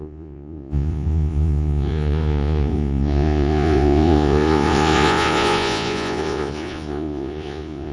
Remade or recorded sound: remade